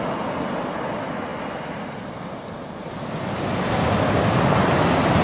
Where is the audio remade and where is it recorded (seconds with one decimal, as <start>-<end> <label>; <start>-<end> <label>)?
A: 0.0-5.2 recorded

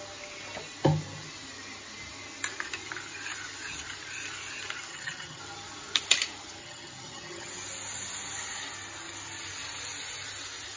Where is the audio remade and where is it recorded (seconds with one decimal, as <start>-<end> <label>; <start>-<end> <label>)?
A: 0.0-4.9 recorded; 4.9-5.4 remade; 5.4-6.6 recorded; 6.6-7.5 remade; 7.5-10.8 recorded